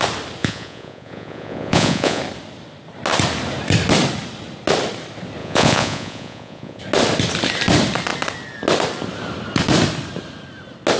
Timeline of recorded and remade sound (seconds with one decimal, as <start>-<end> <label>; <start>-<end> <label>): 0.0-0.4 recorded; 0.4-2.2 remade; 2.2-5.4 recorded; 5.4-6.8 remade; 6.8-11.0 recorded